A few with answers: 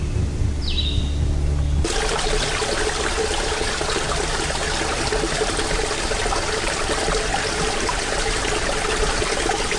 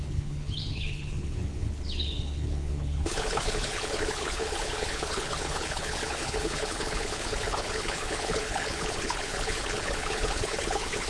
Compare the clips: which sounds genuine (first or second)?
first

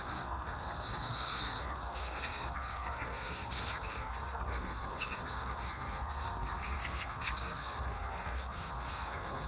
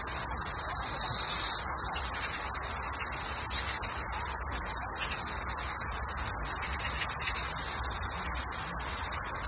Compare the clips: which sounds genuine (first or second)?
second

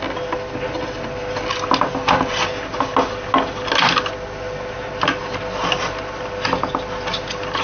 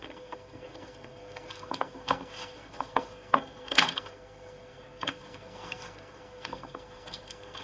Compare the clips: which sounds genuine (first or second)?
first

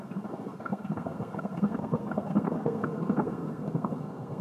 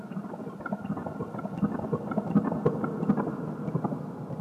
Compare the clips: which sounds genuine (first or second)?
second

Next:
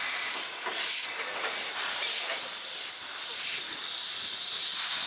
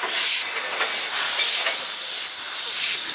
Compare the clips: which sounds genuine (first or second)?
second